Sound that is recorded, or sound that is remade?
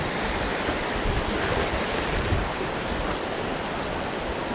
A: recorded